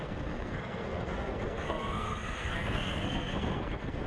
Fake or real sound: fake